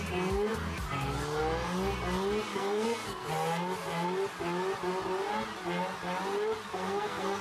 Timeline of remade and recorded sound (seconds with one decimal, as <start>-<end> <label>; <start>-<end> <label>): 0.0-2.5 recorded; 2.5-3.3 remade; 3.3-6.7 recorded; 6.7-7.4 remade